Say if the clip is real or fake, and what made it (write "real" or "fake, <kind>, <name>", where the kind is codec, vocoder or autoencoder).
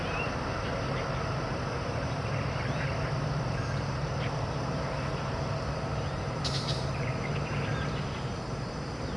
fake, vocoder, BigVGAN v2